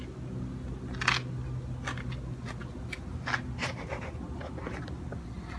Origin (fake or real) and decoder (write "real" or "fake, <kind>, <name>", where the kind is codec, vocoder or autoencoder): real